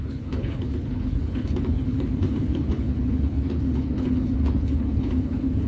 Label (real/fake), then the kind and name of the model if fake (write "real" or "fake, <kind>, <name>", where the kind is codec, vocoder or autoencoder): fake, codec, HILCodec